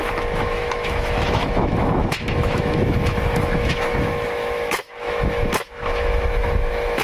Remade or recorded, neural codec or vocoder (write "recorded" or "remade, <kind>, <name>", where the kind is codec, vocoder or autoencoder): remade, autoencoder, DAC-VAE